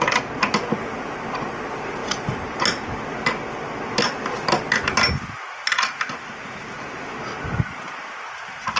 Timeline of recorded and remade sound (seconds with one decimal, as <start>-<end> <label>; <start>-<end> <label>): 0.0-8.8 recorded